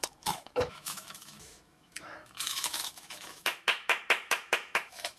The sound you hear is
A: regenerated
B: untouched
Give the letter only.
A